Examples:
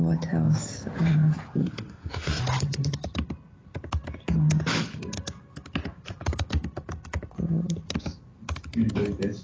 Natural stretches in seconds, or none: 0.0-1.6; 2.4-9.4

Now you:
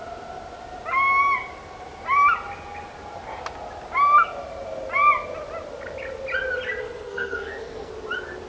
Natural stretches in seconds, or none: 0.0-6.8; 7.9-8.5

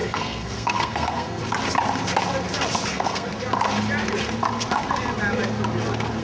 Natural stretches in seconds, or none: 1.4-2.9; 3.3-6.2

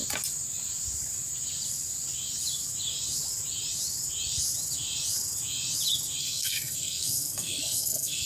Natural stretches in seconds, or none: 0.0-6.2